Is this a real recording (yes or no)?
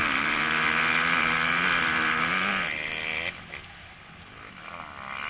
yes